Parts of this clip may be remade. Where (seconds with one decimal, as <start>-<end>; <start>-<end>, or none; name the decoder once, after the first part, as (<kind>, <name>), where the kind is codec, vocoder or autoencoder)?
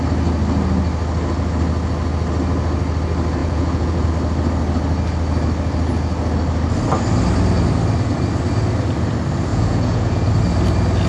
3.4-4.1 (vocoder, Vocos); 9.5-10.3